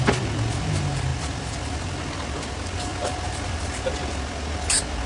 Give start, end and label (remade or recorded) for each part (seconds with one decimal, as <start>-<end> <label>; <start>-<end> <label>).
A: 0.0-1.1 recorded; 1.1-2.0 remade; 2.0-2.9 recorded; 2.9-3.8 remade; 3.8-5.1 recorded